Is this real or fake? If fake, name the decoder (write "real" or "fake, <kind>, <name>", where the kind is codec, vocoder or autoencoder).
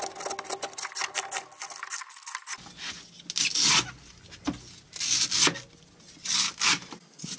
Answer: real